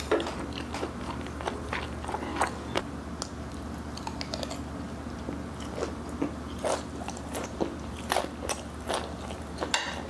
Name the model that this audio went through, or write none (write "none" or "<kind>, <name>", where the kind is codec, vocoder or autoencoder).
none